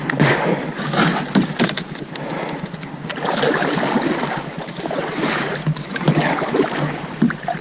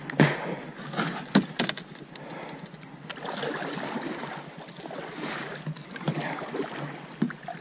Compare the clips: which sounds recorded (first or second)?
second